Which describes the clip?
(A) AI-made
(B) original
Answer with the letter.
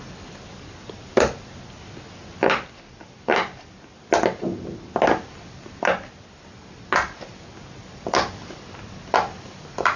B